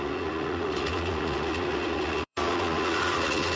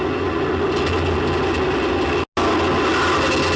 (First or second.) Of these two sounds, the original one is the second